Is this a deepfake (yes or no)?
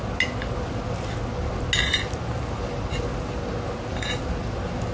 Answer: no